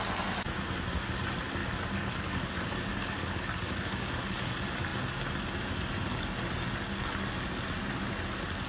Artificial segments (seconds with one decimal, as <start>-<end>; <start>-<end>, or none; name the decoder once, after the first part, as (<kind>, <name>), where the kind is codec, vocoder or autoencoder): 1.6-4.5 (codec, DAC)